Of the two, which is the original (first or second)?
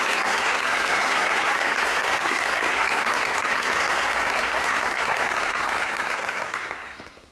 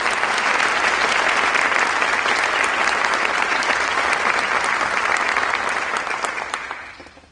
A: second